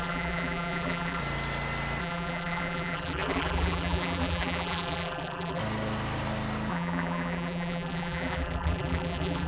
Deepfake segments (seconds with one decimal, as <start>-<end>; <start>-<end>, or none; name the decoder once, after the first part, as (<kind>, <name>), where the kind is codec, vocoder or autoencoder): 0.0-1.2 (vocoder, BigVGAN v2); 2.0-5.6; 6.7-9.5